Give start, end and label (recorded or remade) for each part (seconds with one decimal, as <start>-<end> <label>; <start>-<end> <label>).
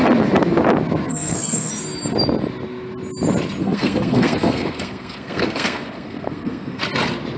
0.0-1.1 recorded; 1.1-1.7 remade; 1.7-3.6 recorded; 3.6-6.8 remade; 6.8-7.4 recorded